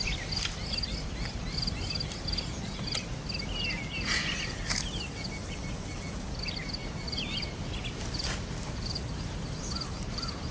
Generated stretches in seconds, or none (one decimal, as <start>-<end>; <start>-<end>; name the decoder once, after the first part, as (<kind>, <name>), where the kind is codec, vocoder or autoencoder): none